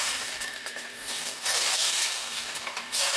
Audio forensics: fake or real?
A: fake